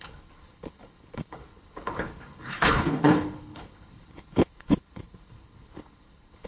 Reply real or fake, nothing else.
fake